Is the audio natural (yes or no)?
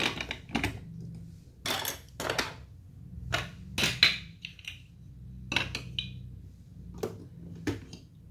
yes